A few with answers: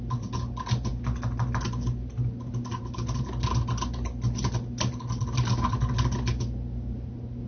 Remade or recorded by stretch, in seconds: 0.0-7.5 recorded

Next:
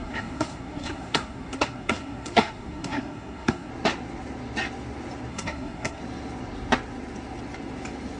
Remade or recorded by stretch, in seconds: 0.0-3.7 remade; 3.7-5.3 recorded; 5.3-6.0 remade; 6.0-8.2 recorded

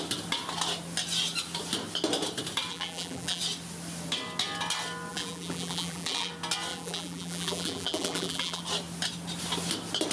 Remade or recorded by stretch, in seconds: 0.0-2.7 recorded; 2.7-3.4 remade; 3.4-5.1 recorded; 5.1-6.3 remade; 6.3-6.7 recorded; 6.7-8.6 remade; 8.6-10.1 recorded